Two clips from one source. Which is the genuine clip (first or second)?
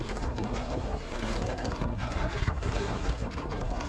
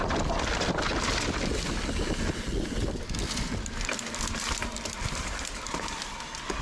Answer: second